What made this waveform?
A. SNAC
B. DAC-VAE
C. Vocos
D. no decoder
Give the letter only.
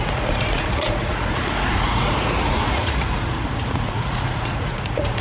C